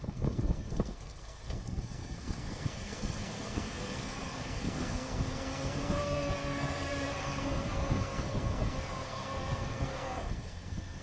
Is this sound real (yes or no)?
no